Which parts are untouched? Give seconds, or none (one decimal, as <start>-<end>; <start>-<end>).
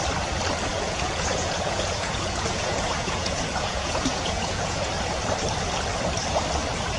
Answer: 0.0-0.7; 4.9-7.0